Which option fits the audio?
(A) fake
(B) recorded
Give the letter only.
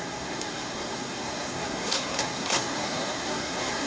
A